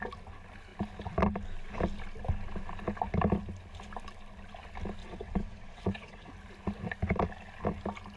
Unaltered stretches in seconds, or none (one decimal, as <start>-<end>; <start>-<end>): 0.0-5.0; 6.3-8.2